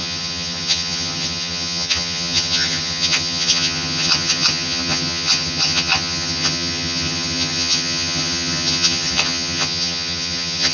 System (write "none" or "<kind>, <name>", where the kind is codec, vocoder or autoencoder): vocoder, HiFi-GAN